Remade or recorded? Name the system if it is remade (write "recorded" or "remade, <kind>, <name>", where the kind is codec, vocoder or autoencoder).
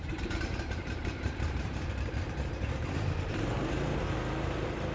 remade, vocoder, BigVGAN v2